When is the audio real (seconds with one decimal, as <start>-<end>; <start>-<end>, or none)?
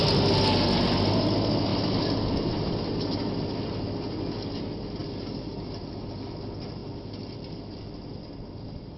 0.0-1.7; 2.5-5.0; 5.8-6.8; 8.4-9.0